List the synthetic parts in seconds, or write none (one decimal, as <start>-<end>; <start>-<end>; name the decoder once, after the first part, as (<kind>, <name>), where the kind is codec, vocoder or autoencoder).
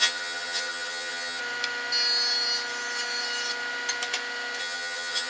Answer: 0.0-1.4 (vocoder, HiFi-GAN); 4.6-5.3